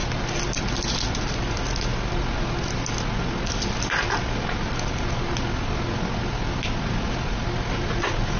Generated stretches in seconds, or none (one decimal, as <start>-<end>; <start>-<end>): none